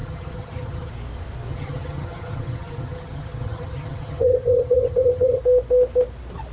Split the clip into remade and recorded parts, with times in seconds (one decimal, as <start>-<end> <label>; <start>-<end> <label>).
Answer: 0.0-0.9 remade; 0.9-1.5 recorded; 1.5-5.4 remade; 5.4-6.5 recorded